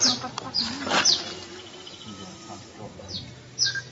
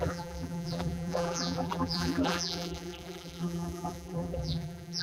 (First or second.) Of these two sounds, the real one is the first